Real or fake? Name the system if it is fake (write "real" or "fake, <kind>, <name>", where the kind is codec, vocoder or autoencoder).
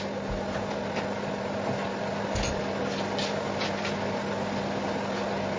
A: real